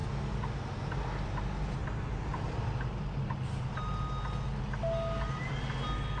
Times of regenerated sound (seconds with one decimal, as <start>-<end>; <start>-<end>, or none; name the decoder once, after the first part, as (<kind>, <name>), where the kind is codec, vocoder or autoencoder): 1.8-2.7 (vocoder, BigVGAN v2)